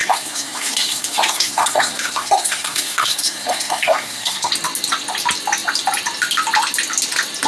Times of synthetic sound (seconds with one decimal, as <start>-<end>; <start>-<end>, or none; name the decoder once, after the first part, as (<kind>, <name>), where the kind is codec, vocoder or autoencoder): 0.0-4.5 (codec, SNAC)